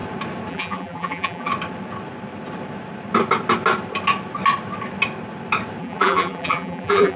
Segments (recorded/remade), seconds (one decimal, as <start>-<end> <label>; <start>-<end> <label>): 0.0-0.5 recorded; 0.5-1.5 remade; 1.5-5.8 recorded; 5.8-7.2 remade